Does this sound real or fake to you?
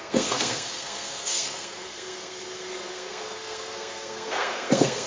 fake